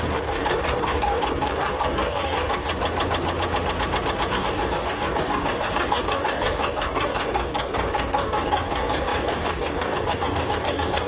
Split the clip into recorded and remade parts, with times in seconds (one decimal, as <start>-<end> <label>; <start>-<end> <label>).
0.0-2.7 remade; 2.7-4.3 recorded; 4.3-11.1 remade